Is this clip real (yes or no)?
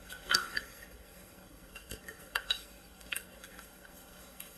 no